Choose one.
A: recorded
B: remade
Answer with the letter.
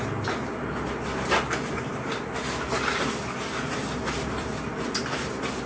A